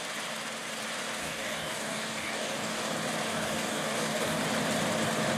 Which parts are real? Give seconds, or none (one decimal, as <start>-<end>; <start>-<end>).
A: 0.0-1.2; 2.9-3.3; 4.4-5.4